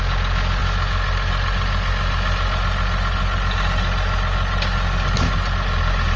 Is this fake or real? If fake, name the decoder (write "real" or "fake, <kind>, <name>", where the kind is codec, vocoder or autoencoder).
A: real